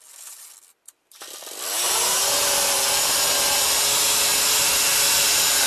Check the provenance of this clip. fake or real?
real